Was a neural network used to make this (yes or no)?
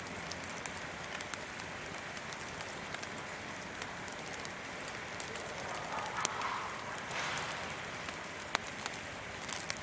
no